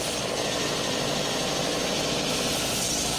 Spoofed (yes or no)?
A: no